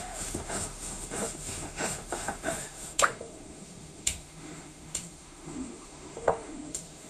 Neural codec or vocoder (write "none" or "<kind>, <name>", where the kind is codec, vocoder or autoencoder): autoencoder, DAC-VAE